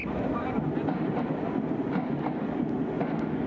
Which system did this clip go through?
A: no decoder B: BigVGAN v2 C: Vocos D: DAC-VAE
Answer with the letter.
A